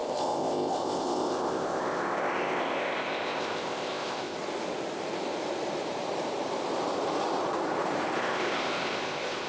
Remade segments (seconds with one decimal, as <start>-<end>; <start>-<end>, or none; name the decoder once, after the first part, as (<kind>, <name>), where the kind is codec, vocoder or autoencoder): 0.0-4.4 (codec, ZipCodec); 8.2-9.5